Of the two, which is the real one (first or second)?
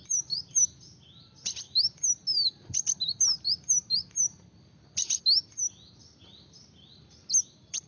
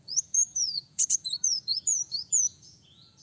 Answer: first